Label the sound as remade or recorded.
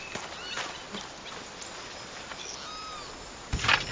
recorded